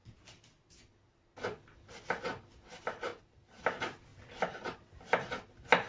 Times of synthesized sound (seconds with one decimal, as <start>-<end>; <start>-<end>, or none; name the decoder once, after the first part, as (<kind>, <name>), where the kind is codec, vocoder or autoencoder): none